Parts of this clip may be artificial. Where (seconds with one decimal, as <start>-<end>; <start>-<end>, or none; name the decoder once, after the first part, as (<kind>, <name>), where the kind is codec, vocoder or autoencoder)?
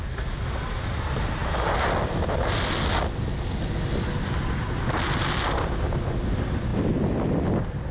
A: none